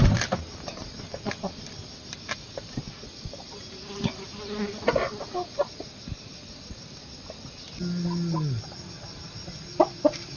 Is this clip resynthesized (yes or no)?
no